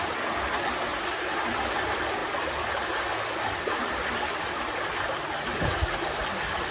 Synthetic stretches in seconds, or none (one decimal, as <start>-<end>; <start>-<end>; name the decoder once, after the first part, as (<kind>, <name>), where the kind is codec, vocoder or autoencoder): none

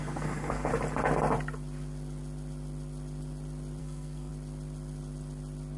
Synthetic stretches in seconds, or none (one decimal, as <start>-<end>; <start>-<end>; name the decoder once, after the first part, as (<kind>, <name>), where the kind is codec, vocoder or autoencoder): 0.0-0.7 (codec, SNAC); 3.8-4.3

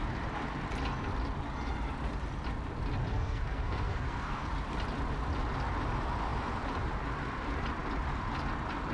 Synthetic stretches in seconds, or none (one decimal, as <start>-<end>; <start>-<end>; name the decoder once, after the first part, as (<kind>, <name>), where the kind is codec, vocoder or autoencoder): 3.1-4.4 (codec, SNAC)